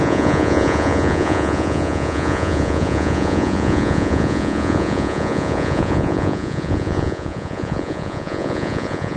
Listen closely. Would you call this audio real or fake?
fake